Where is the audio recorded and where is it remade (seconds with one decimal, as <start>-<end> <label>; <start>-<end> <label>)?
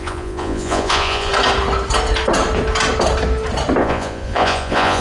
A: 0.0-1.3 remade; 1.3-3.8 recorded; 3.8-5.0 remade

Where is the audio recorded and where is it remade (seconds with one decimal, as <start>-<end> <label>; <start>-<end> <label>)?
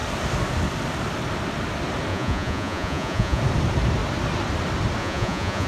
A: 0.0-2.1 recorded; 2.1-3.4 remade; 3.4-5.0 recorded; 5.0-5.7 remade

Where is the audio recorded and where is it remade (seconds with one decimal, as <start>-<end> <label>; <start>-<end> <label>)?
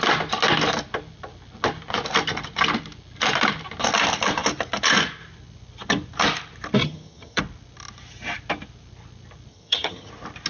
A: 0.0-6.8 recorded; 6.8-7.4 remade; 7.4-9.5 recorded; 9.5-10.1 remade; 10.1-10.5 recorded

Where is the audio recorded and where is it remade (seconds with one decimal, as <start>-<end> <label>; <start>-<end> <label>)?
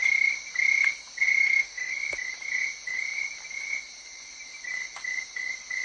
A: 0.0-1.4 recorded; 1.4-1.9 remade; 1.9-5.8 recorded